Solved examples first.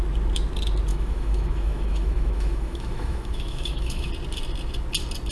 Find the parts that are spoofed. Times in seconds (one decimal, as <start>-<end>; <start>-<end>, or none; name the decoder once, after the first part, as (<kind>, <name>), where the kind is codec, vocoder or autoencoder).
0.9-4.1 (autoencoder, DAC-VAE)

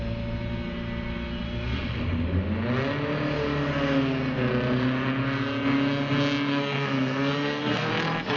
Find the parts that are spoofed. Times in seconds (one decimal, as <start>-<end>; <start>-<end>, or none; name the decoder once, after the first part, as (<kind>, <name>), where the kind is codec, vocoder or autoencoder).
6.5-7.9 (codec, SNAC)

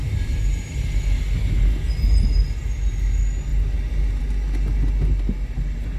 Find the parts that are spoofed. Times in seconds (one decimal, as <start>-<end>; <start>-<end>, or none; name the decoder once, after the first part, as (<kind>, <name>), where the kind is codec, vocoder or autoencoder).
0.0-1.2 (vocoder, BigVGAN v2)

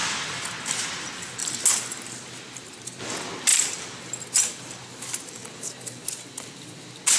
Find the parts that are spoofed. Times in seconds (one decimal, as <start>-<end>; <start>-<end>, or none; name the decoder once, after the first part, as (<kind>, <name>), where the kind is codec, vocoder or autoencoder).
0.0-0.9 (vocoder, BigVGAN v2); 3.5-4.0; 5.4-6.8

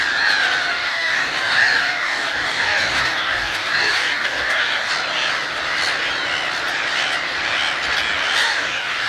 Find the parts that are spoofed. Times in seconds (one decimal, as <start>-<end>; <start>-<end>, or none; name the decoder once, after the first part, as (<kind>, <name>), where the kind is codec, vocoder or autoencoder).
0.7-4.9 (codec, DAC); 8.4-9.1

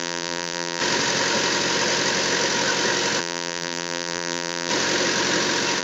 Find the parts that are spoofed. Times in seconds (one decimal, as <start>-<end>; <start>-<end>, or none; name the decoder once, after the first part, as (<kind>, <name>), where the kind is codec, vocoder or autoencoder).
0.0-0.8 (vocoder, BigVGAN v2); 3.2-4.7

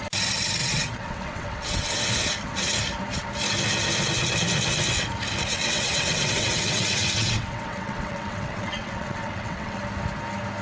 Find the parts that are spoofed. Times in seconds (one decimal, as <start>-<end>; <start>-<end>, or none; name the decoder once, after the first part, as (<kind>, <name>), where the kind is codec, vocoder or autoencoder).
0.6-2.0 (vocoder, WaveNeXt); 5.5-9.8

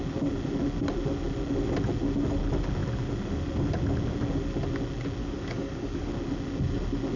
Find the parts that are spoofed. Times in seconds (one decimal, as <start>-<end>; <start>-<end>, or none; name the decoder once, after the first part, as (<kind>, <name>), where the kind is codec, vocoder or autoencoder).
5.2-6.1 (codec, DAC)